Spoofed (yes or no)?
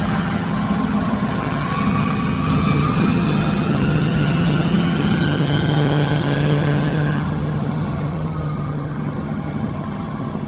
yes